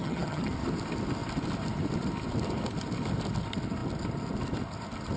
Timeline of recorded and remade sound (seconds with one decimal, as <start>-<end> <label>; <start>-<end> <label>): 0.0-0.5 remade; 0.5-5.2 recorded

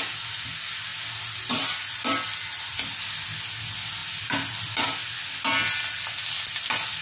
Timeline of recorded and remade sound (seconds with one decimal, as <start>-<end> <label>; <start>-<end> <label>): 0.0-7.0 recorded

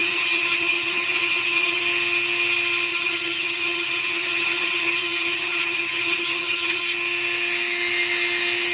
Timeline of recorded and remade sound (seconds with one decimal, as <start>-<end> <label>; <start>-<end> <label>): 0.0-1.8 remade; 1.8-2.9 recorded; 2.9-6.8 remade; 6.8-8.7 recorded

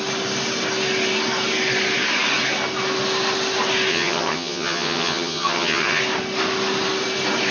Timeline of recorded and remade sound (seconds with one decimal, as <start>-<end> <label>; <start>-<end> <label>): 0.0-3.9 recorded; 3.9-6.0 remade; 6.0-7.5 recorded

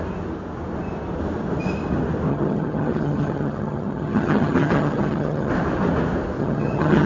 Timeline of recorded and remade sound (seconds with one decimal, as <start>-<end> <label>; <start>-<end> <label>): 0.0-2.3 recorded; 2.3-5.5 remade; 5.5-6.4 recorded; 6.4-7.1 remade

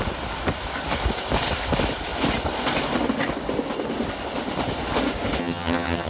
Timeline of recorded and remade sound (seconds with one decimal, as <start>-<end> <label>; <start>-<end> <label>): 0.0-5.4 recorded; 5.4-6.1 remade

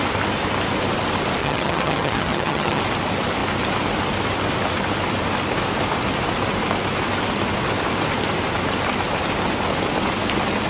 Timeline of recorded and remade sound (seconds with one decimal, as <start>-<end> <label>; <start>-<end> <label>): 0.0-1.4 recorded; 1.4-2.8 remade; 2.8-10.7 recorded